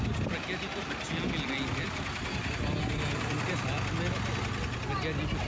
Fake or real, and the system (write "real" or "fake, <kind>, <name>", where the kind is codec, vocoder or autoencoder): real